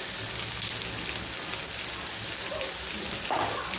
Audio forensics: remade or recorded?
recorded